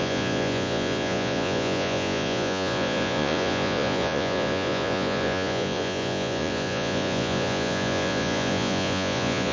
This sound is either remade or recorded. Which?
remade